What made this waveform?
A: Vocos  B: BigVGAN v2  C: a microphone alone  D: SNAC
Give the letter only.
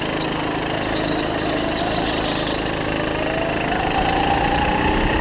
C